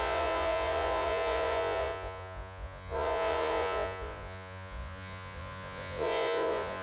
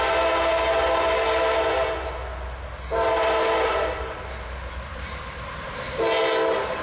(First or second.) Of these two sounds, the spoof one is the first